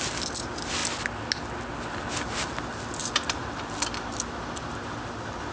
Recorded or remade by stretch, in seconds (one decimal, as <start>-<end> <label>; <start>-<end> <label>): 0.0-5.5 recorded